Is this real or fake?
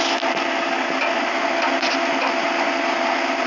real